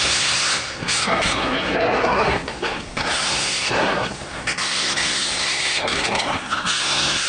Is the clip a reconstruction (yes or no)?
yes